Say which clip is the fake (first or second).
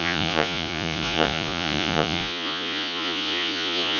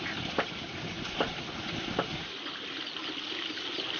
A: first